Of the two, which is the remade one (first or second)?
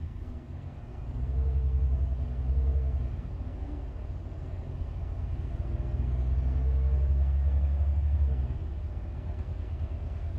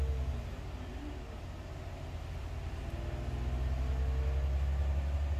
first